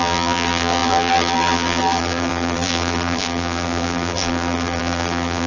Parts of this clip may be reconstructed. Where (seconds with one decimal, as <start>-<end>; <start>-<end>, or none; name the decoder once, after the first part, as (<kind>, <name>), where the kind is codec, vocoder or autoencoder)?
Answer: 0.0-5.5 (vocoder, BigVGAN v2)